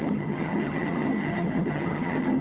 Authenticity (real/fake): fake